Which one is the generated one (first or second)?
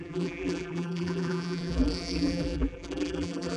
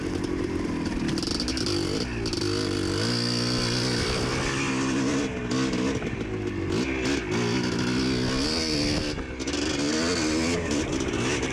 first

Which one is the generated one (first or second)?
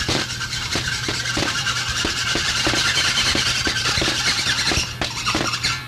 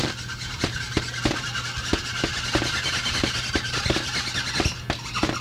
first